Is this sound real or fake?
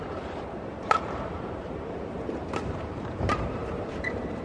fake